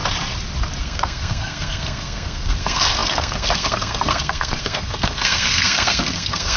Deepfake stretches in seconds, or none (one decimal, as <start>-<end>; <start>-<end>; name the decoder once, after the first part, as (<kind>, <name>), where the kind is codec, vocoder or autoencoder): 0.8-6.6 (codec, SNAC)